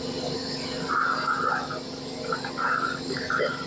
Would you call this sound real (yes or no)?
yes